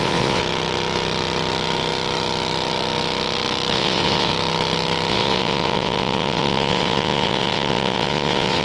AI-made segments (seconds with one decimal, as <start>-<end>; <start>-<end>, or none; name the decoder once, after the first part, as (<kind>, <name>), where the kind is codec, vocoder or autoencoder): 0.0-0.4 (vocoder, WaveNeXt); 3.7-4.3; 5.1-8.6